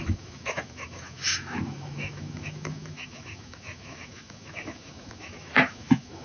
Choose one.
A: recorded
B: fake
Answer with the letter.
B